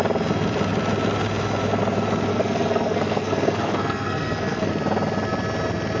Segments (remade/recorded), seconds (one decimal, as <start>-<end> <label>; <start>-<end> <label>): 0.0-2.3 recorded; 2.3-4.7 remade; 4.7-6.0 recorded